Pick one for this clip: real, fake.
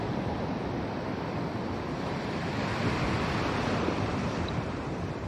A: fake